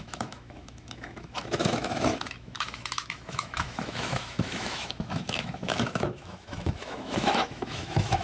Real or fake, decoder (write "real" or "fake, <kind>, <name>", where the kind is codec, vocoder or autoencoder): fake, autoencoder, DAC-VAE